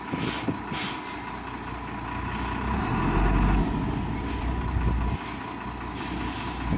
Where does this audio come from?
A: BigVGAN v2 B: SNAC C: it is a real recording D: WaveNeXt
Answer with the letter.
C